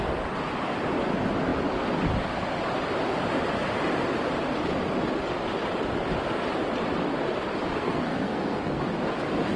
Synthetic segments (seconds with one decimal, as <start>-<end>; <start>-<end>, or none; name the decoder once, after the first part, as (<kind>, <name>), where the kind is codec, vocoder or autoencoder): 7.7-8.8 (codec, SNAC)